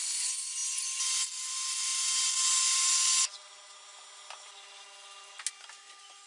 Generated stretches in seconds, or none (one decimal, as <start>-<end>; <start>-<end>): none